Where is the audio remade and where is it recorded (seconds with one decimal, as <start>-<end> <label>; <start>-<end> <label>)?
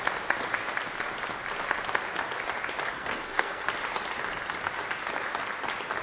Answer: 0.0-2.9 recorded; 2.9-3.7 remade; 3.7-6.0 recorded